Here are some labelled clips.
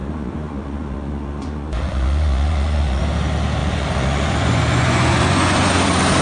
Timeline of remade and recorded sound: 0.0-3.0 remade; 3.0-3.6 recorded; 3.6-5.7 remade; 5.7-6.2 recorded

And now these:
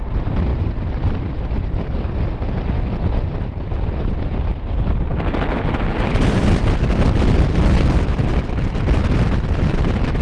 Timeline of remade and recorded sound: 0.0-10.2 recorded

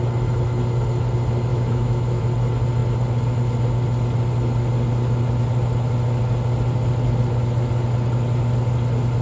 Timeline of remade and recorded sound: 0.0-1.5 recorded; 1.5-2.2 remade; 2.2-9.2 recorded

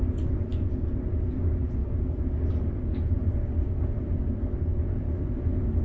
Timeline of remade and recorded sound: 0.0-5.8 recorded